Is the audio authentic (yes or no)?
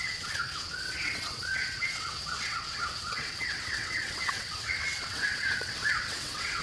no